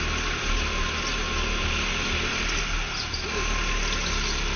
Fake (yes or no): no